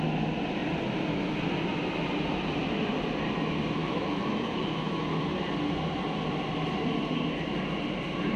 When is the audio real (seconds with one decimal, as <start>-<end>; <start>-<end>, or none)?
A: 0.0-3.8; 5.2-8.4